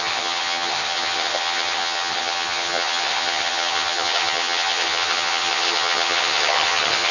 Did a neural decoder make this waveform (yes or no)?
yes